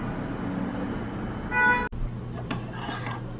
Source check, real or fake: real